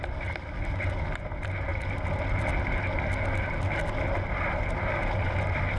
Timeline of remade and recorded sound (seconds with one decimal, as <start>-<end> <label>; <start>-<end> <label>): 0.0-5.8 recorded